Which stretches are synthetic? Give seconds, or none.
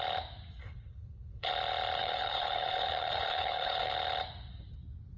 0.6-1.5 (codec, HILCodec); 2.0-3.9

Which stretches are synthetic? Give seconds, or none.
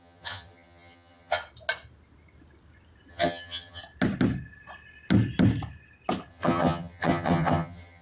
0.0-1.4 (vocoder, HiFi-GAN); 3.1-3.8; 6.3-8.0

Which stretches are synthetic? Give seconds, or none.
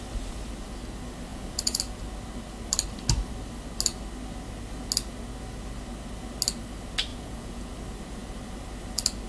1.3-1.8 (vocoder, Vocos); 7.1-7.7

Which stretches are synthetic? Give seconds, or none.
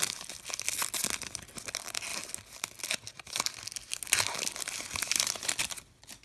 none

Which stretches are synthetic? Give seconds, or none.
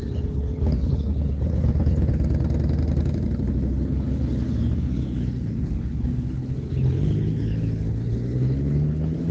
0.0-2.1 (codec, HILCodec); 3.5-9.3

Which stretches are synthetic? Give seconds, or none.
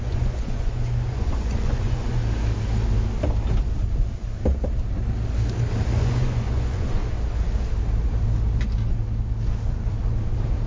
0.0-2.2 (vocoder, Vocos); 6.0-7.0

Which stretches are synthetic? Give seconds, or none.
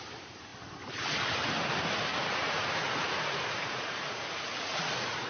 2.1-5.3 (vocoder, Vocos)